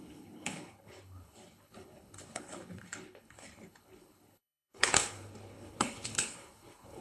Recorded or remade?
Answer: remade